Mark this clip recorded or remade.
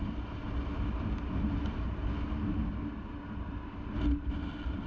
recorded